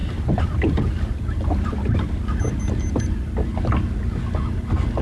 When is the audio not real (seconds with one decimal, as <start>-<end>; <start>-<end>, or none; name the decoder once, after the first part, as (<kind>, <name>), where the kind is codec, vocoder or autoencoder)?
none